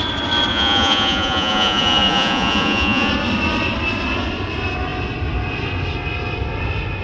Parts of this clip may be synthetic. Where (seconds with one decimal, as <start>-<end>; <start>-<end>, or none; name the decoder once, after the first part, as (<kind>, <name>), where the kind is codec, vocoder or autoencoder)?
0.5-3.1 (vocoder, Vocos)